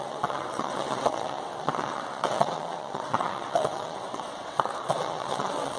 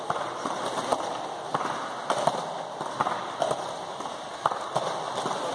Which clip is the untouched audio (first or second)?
second